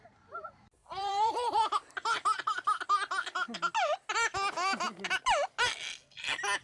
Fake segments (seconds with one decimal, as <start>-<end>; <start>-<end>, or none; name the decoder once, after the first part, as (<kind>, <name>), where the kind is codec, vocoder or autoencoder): 0.8-1.6 (vocoder, BigVGAN v2)